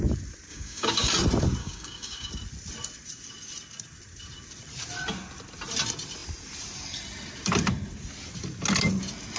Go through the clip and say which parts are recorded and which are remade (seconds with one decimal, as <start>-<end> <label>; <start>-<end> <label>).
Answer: 0.0-0.5 recorded; 0.5-1.1 remade; 1.1-1.6 recorded; 1.6-2.3 remade; 2.3-9.4 recorded